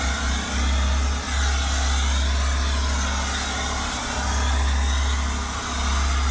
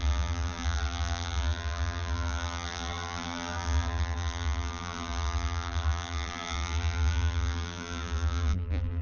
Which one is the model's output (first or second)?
second